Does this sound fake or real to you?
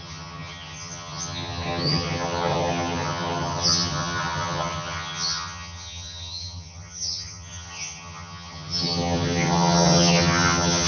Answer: fake